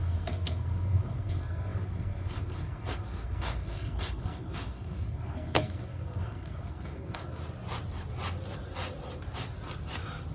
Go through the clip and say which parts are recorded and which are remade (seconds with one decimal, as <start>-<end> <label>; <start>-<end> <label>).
0.0-7.4 remade; 7.4-10.3 recorded